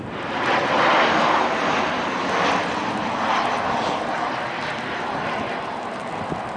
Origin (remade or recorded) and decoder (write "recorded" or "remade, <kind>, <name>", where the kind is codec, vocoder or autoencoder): recorded